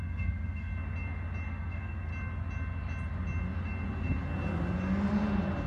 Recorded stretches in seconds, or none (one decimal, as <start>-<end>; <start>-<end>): 0.7-1.5; 2.1-5.7